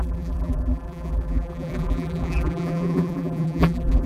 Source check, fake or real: fake